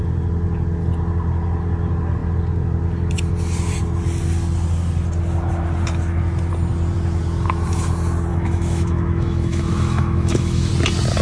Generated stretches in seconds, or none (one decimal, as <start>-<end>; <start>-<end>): 8.3-10.7